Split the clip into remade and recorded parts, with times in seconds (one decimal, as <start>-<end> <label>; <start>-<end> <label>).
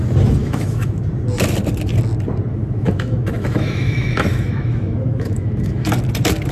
0.0-0.4 recorded; 0.4-1.0 remade; 1.0-2.5 recorded; 2.5-5.9 remade; 5.9-6.5 recorded